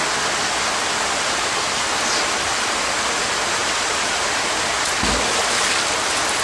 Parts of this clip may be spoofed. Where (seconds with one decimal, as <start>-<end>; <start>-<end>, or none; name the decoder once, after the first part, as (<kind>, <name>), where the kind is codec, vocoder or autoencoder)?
3.6-4.7 (vocoder, BigVGAN v2)